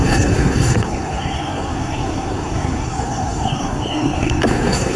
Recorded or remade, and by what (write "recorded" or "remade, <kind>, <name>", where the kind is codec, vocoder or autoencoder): remade, codec, SNAC